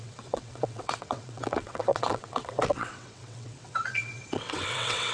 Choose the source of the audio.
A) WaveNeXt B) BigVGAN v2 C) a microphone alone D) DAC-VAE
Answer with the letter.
A